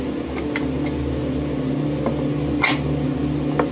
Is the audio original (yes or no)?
yes